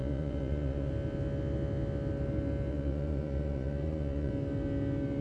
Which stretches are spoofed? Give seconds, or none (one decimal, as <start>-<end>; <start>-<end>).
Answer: 0.0-0.9; 2.7-4.3